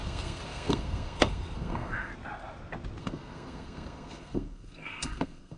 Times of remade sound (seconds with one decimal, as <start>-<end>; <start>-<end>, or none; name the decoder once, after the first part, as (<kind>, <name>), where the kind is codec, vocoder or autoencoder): 0.0-2.1 (codec, SNAC); 3.0-5.6